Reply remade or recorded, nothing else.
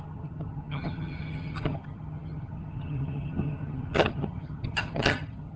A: remade